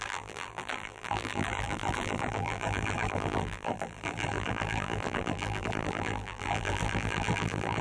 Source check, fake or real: fake